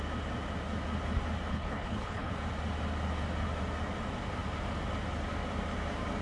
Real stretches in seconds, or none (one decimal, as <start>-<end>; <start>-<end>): 0.0-1.5; 2.3-6.2